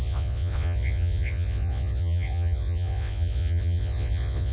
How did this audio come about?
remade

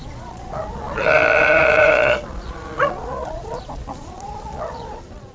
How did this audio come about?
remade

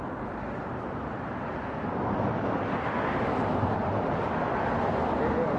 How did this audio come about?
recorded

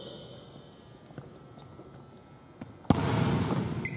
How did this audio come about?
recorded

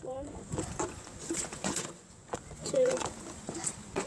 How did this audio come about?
remade